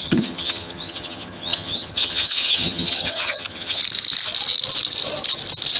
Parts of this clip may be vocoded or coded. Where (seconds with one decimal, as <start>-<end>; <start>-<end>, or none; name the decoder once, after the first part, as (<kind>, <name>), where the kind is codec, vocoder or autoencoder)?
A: 0.0-3.8 (vocoder, HiFi-GAN)